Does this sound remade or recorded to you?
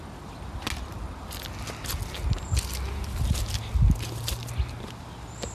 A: recorded